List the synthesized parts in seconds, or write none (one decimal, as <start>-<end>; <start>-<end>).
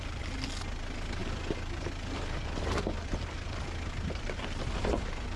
none